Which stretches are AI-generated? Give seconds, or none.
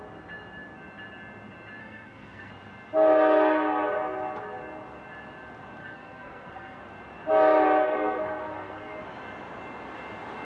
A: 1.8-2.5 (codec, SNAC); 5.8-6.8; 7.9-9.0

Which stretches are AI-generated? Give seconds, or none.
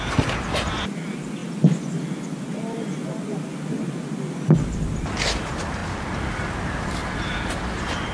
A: none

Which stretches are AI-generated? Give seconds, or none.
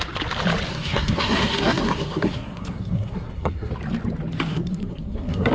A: 0.7-3.7 (codec, SNAC); 4.5-5.5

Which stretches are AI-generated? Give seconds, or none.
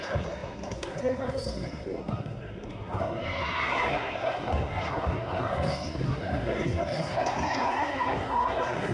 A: 0.0-8.9 (codec, SNAC)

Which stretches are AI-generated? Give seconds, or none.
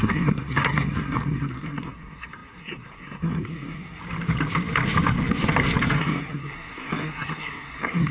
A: 0.0-4.0 (codec, SNAC); 6.0-8.1